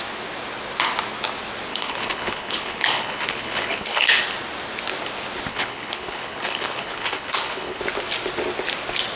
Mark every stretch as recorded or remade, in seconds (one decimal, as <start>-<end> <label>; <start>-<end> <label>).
0.0-1.7 recorded; 1.7-4.2 remade; 4.2-5.5 recorded; 5.5-7.8 remade; 7.8-9.2 recorded